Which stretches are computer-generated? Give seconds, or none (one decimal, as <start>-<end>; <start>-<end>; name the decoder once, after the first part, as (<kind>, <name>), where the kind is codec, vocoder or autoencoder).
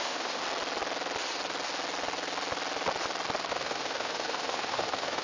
0.0-0.4 (autoencoder, DAC-VAE); 3.5-5.2